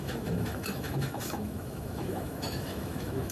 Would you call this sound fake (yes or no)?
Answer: yes